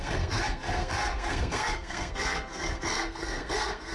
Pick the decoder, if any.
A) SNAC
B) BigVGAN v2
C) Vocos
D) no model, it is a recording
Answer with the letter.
A